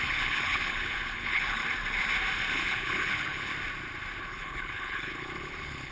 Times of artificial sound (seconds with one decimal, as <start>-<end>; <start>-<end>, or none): 0.0-1.6; 2.5-3.5; 4.2-5.9